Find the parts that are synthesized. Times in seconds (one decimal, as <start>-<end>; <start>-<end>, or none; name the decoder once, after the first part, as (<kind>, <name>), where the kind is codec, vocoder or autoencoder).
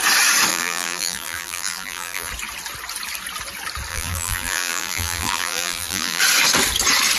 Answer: 0.5-2.3 (vocoder, BigVGAN v2); 3.9-6.2